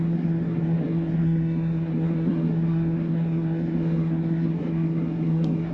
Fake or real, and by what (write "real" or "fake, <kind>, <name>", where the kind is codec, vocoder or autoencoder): fake, codec, SNAC